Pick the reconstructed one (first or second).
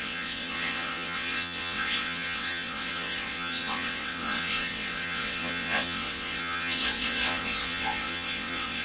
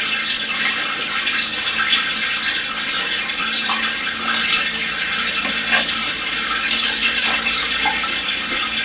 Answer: first